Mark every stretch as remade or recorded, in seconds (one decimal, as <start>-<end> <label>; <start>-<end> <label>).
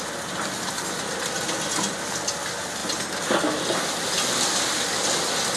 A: 0.0-5.6 recorded